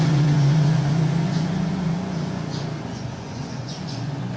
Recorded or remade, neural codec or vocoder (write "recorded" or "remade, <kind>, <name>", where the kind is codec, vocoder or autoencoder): remade, vocoder, Vocos